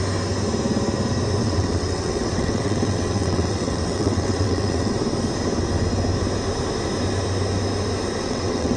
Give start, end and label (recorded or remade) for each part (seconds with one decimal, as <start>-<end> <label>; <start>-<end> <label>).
0.0-1.4 recorded; 1.4-4.9 remade; 4.9-8.2 recorded; 8.2-8.8 remade